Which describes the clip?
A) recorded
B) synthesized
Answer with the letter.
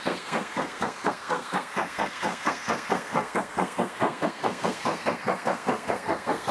B